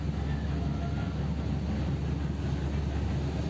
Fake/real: real